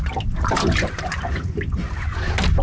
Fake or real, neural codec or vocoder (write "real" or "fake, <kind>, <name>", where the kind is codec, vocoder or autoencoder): real